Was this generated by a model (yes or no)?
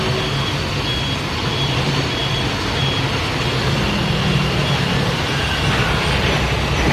no